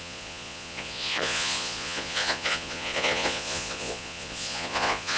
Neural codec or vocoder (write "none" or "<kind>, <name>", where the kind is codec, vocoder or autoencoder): vocoder, Vocos